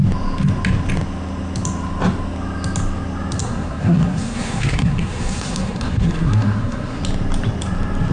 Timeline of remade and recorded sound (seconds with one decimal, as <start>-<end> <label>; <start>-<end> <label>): 0.0-3.4 recorded; 3.4-7.0 remade; 7.0-8.1 recorded